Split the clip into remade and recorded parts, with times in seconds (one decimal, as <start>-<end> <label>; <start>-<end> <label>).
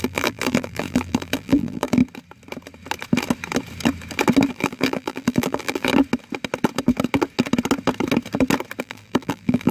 0.0-2.0 remade; 2.0-4.5 recorded; 4.5-5.9 remade; 5.9-8.8 recorded; 8.8-9.7 remade